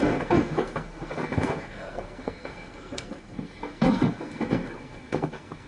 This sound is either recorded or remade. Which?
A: remade